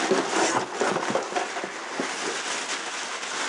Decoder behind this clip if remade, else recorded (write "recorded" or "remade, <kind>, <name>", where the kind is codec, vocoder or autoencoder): recorded